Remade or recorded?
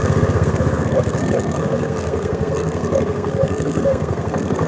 remade